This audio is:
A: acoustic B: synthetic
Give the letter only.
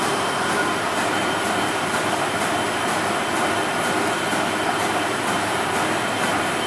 A